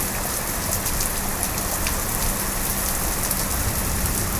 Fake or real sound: real